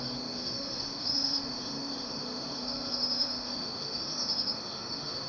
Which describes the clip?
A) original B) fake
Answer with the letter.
B